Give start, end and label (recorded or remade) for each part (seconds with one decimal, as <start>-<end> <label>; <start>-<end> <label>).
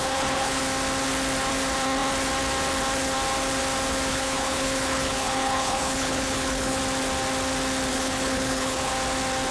0.0-0.6 remade; 0.6-4.1 recorded; 4.1-6.8 remade; 6.8-7.9 recorded; 7.9-8.9 remade; 8.9-9.5 recorded